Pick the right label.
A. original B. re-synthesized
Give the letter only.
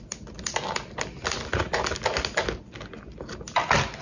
A